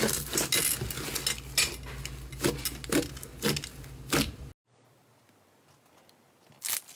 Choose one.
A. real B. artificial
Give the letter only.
A